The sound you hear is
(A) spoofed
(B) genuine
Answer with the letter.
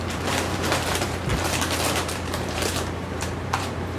A